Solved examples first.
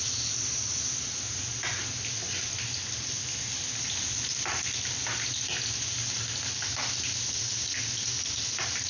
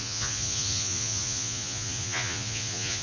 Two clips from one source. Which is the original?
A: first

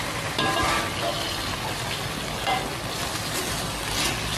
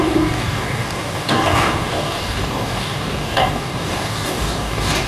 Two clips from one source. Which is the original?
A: first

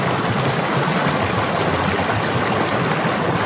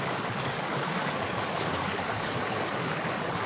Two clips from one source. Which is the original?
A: first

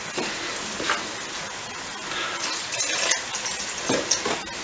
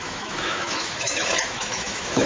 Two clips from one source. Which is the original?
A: first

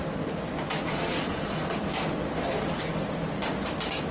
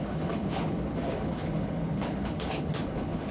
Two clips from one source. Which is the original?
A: first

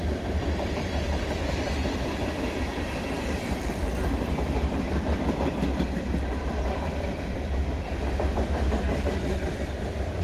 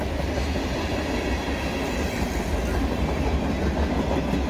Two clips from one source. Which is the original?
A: second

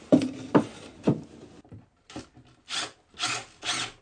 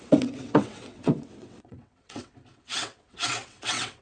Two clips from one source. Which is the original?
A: first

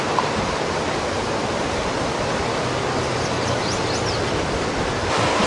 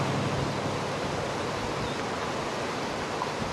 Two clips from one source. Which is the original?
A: second